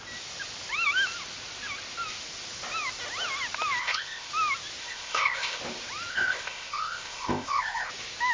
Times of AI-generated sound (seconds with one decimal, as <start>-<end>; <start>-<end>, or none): 3.8-4.3; 4.8-5.6; 6.1-7.9